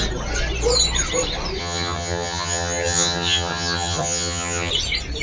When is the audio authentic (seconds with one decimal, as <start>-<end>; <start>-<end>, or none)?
0.0-1.6; 4.7-5.2